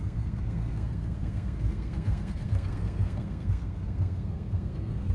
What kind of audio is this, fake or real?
fake